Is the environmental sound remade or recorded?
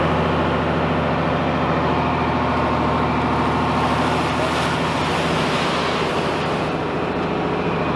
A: recorded